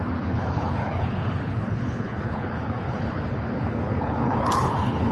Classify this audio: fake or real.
fake